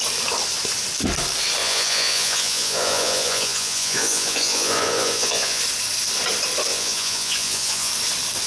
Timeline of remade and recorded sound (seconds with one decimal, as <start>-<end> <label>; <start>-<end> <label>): 0.0-1.6 recorded; 1.6-5.6 remade; 5.6-6.7 recorded; 6.7-7.9 remade; 7.9-8.5 recorded